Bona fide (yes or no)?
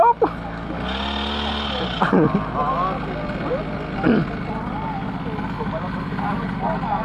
yes